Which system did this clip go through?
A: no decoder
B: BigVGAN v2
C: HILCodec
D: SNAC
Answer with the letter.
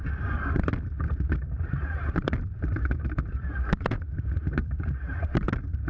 B